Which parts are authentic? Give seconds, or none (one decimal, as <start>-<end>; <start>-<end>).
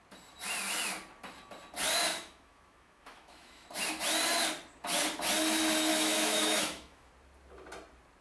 0.0-2.1; 3.7-5.9; 7.1-8.2